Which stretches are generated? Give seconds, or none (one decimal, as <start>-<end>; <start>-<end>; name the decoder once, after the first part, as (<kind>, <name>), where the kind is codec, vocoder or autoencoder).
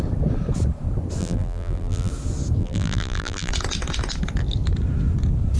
1.2-2.1 (vocoder, BigVGAN v2); 2.6-3.5